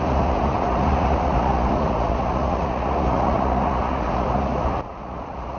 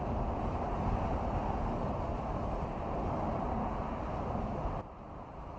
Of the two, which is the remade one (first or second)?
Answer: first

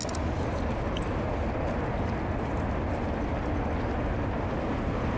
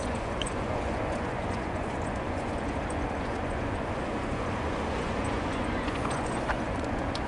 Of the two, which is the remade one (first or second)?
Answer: second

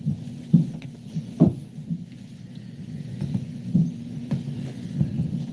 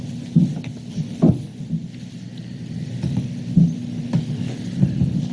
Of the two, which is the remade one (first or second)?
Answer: first